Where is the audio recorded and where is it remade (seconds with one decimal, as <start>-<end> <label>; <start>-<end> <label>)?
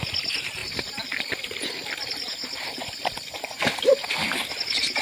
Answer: 0.0-5.0 recorded